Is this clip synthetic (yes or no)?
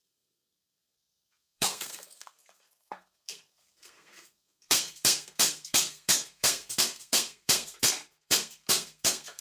yes